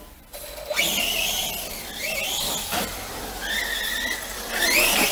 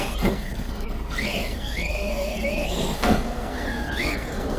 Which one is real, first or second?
first